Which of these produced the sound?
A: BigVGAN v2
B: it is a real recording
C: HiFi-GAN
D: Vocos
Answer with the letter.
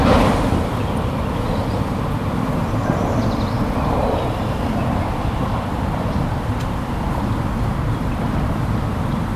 A